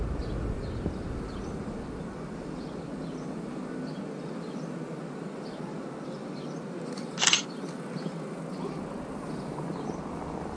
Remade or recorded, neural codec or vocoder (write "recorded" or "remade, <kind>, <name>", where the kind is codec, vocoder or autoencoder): recorded